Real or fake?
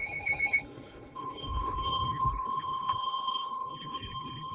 fake